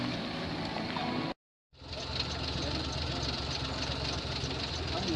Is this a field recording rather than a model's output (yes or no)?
yes